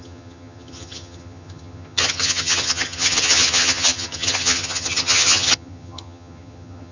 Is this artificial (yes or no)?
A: yes